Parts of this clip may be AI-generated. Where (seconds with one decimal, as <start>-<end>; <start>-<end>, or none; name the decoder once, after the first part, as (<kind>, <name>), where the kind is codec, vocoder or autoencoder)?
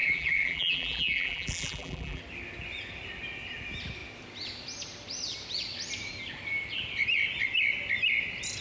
0.0-2.2 (vocoder, BigVGAN v2)